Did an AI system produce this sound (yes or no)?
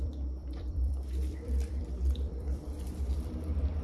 yes